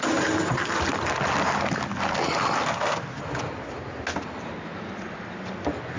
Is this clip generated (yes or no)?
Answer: no